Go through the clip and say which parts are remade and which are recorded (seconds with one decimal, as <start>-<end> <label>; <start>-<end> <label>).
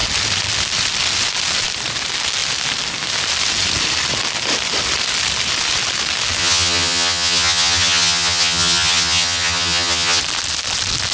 0.0-6.4 recorded; 6.4-10.2 remade; 10.2-11.1 recorded